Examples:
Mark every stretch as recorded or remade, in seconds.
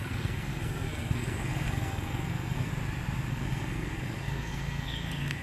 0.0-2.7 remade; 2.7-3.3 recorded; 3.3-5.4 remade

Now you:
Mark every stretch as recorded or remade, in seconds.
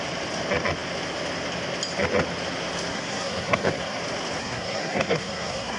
0.0-2.9 recorded; 2.9-4.0 remade; 4.0-4.4 recorded; 4.4-5.8 remade